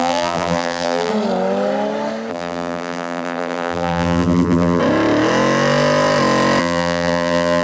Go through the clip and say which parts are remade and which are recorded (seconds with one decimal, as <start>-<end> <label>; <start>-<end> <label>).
0.0-1.1 remade; 1.1-2.3 recorded; 2.3-4.8 remade; 4.8-6.6 recorded; 6.6-7.6 remade